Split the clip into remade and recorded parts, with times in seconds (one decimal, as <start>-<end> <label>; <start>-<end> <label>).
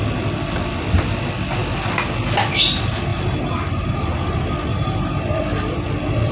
0.0-3.1 recorded; 3.1-4.2 remade; 4.2-4.7 recorded; 4.7-5.2 remade; 5.2-6.3 recorded